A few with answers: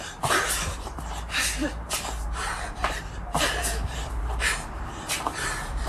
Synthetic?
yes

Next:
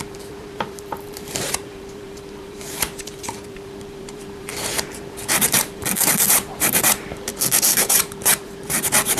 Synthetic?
yes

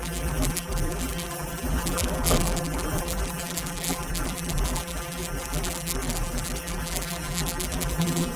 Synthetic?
yes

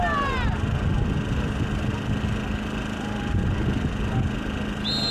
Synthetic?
no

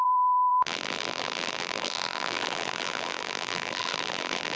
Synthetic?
yes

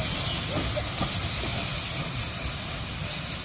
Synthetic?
no